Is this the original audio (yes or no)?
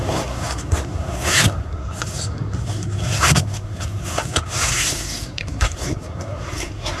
no